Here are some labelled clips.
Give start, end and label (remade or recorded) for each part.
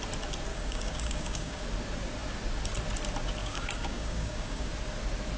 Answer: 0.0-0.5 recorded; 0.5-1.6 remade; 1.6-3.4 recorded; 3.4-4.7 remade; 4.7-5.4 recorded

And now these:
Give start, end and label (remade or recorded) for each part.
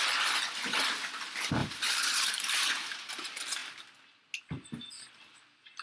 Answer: 0.0-1.6 recorded; 1.6-3.1 remade; 3.1-5.8 recorded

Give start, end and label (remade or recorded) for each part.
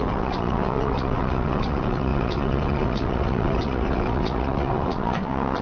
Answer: 0.0-5.6 remade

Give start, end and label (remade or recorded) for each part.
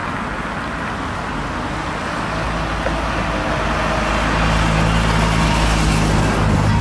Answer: 0.0-6.8 recorded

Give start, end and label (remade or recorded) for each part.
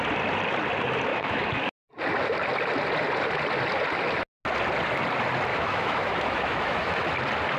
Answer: 0.0-1.1 recorded; 1.1-1.7 remade; 1.7-5.5 recorded; 5.5-7.1 remade; 7.1-7.6 recorded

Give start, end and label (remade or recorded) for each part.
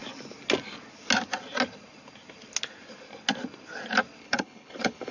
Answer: 0.0-4.2 recorded; 4.2-5.1 remade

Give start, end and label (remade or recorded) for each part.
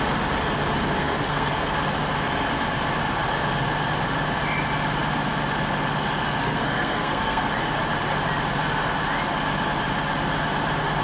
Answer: 0.0-1.0 recorded; 1.0-1.5 remade; 1.5-6.4 recorded; 6.4-7.5 remade; 7.5-11.0 recorded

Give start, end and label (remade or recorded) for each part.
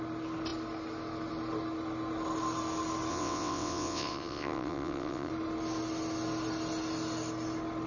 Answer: 0.0-3.1 recorded; 3.1-5.3 remade; 5.3-7.9 recorded